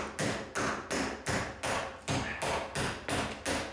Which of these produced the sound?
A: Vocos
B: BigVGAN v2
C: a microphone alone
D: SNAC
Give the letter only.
C